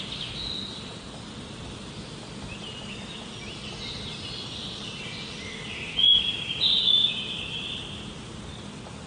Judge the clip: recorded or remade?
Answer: recorded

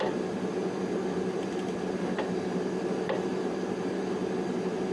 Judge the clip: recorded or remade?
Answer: recorded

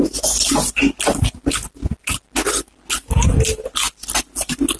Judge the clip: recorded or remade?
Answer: recorded